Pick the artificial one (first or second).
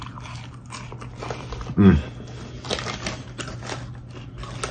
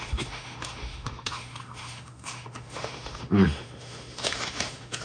second